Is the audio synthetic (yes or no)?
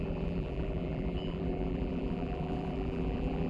yes